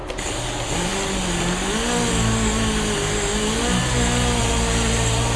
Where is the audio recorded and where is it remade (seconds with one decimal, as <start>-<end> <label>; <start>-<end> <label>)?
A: 0.0-4.4 recorded; 4.4-5.4 remade